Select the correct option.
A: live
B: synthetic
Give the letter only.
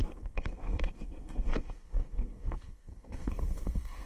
B